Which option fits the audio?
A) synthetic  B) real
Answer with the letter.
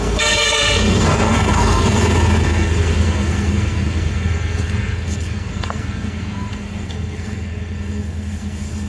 A